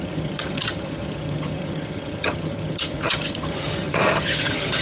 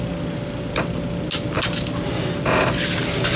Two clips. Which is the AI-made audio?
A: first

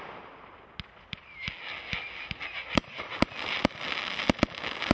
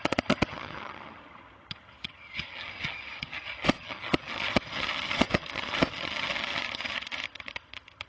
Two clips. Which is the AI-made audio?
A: second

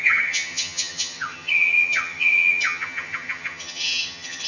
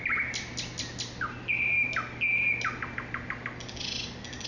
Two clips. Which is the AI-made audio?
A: first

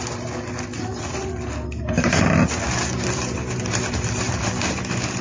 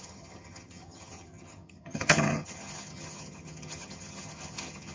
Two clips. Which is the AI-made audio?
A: second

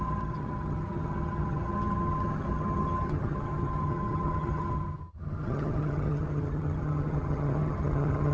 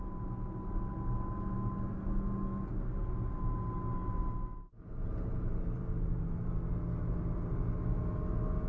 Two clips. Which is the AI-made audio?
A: first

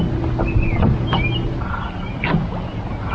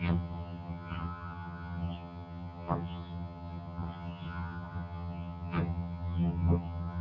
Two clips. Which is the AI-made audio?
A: second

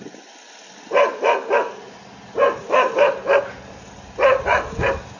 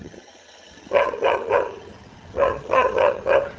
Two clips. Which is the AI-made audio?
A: second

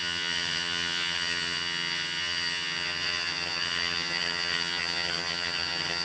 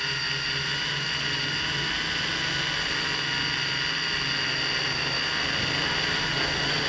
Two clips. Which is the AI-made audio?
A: first